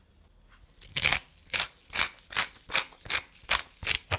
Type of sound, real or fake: real